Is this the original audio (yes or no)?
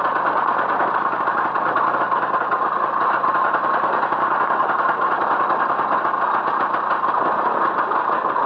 yes